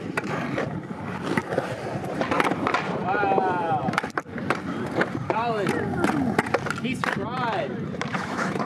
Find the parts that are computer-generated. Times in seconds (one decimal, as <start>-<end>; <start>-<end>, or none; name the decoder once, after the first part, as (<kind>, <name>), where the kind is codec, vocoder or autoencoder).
8.1-8.7 (autoencoder, DAC-VAE)